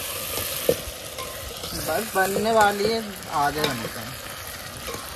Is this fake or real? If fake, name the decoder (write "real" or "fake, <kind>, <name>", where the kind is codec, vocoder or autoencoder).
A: real